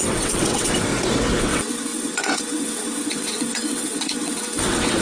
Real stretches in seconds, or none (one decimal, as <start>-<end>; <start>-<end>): 0.9-1.4

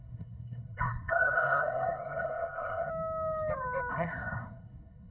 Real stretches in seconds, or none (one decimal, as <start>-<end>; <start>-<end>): 2.9-3.9